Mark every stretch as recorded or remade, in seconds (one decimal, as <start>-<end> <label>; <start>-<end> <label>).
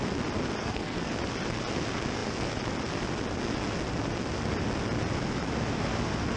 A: 0.0-0.6 recorded; 0.6-1.1 remade; 1.1-6.4 recorded